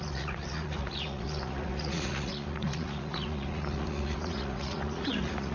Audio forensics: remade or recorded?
remade